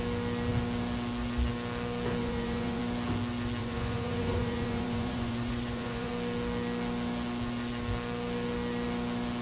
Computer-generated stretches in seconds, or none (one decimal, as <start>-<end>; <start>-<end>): 2.2-2.8; 3.6-6.1